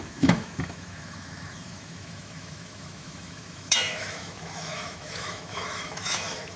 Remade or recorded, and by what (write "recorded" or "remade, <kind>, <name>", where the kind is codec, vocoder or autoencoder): remade, autoencoder, DAC-VAE